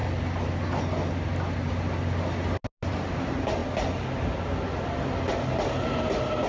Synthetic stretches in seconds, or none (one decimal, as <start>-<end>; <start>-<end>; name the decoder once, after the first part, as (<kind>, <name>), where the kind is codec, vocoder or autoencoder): none

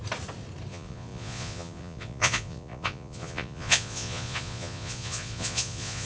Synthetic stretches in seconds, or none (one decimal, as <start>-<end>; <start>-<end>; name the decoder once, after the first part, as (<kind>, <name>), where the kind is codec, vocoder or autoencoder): 0.7-6.1 (vocoder, Vocos)